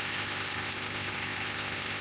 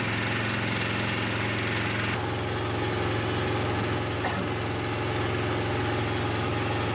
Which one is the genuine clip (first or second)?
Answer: second